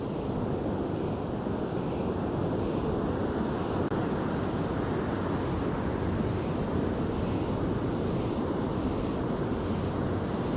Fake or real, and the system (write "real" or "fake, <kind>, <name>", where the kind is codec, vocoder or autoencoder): real